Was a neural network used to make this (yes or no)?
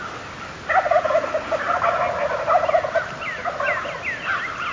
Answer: no